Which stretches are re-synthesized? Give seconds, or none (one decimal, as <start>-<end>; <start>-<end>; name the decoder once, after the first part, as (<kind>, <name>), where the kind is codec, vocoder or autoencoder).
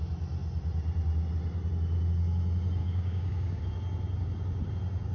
2.8-3.6 (codec, DAC)